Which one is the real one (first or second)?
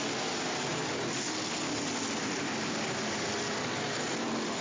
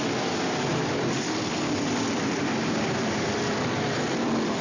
first